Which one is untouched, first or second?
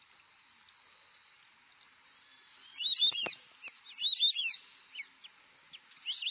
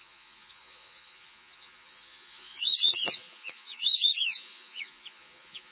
first